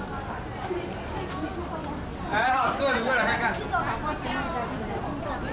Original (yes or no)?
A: yes